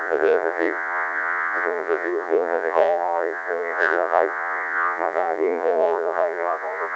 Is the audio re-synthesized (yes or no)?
yes